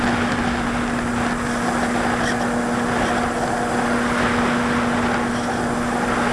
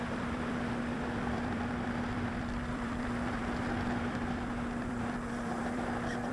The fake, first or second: second